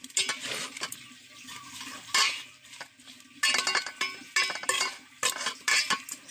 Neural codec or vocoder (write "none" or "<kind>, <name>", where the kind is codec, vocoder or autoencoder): none